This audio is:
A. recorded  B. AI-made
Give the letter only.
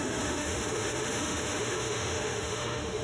B